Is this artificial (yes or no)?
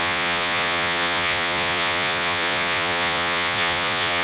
yes